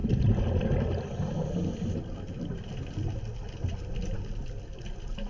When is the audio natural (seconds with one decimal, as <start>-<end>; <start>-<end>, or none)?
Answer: 0.0-5.3